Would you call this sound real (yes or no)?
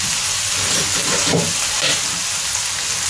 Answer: yes